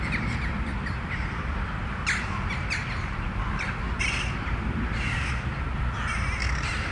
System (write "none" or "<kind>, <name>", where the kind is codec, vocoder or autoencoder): none